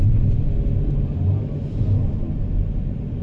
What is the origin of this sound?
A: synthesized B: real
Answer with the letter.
B